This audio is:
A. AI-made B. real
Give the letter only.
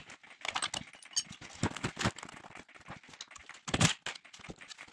B